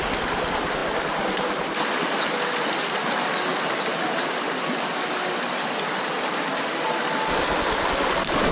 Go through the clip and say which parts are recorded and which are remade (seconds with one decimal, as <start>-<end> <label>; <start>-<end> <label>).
0.0-8.5 recorded